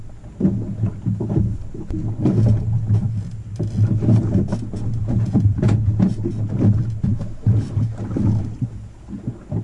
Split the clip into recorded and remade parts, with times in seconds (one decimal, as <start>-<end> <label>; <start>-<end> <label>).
0.0-5.0 recorded; 5.0-5.7 remade; 5.7-9.6 recorded